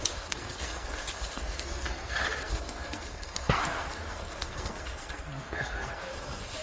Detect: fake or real fake